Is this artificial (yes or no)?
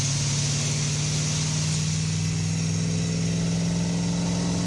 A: no